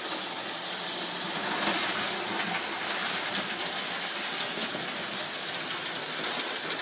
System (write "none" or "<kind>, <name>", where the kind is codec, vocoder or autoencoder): none